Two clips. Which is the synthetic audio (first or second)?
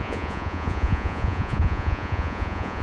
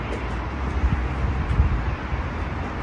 first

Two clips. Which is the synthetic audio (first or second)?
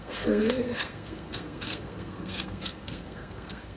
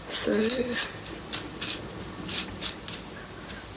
first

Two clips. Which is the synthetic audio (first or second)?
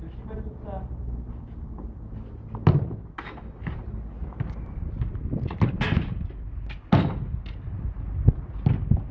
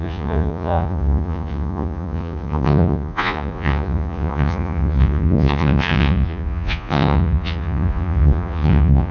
second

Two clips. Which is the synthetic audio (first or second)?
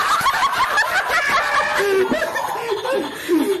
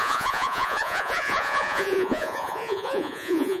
second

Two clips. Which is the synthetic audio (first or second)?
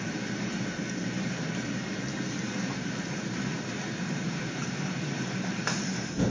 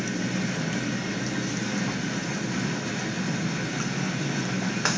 first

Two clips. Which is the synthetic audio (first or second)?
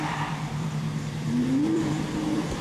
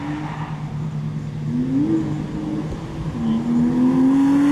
first